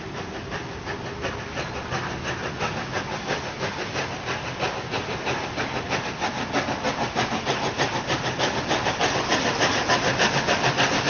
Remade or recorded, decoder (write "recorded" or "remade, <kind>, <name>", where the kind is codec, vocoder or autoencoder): recorded